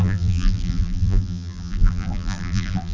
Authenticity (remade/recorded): remade